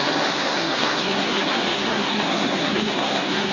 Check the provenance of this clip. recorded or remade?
remade